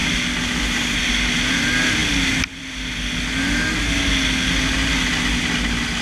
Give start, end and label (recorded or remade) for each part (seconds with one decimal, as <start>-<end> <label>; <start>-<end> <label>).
0.0-6.0 recorded